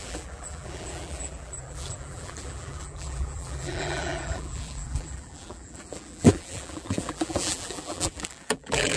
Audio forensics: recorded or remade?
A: remade